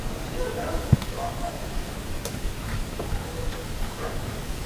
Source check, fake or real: fake